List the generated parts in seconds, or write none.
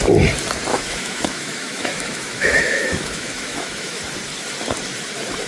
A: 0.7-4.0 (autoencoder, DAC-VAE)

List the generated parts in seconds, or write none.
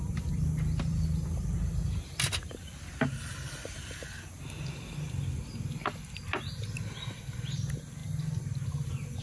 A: none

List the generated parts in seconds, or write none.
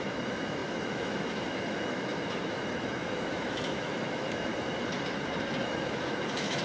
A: 0.0-4.5 (autoencoder, DAC-VAE); 5.6-6.6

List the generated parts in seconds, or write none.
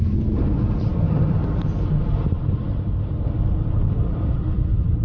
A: none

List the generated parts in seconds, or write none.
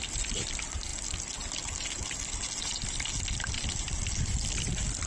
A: none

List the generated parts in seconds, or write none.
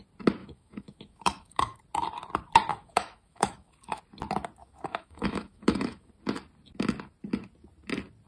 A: 0.4-1.8 (autoencoder, DAC-VAE); 2.7-4.0; 4.6-6.1